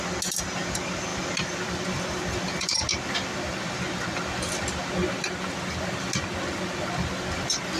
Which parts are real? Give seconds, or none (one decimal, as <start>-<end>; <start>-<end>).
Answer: 0.0-7.8